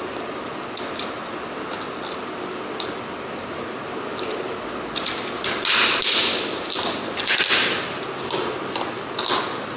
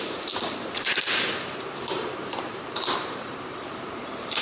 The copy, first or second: second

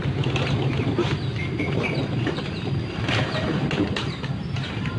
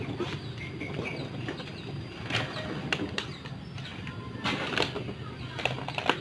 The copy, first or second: first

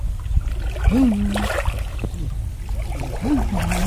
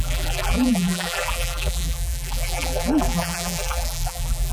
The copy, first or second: second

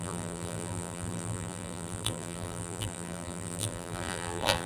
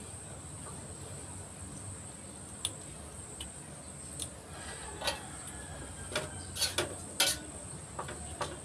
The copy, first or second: first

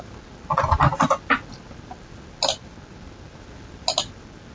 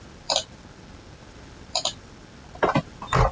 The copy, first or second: second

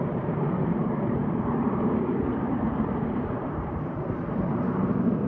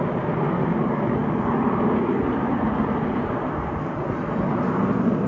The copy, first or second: first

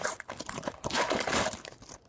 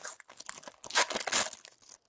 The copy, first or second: first